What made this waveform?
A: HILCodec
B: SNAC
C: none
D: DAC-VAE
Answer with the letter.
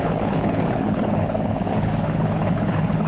A